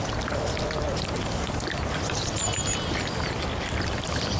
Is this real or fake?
fake